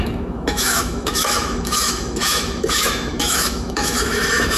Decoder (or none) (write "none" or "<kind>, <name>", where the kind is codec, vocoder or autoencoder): autoencoder, DAC-VAE